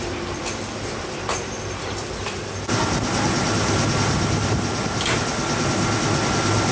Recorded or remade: recorded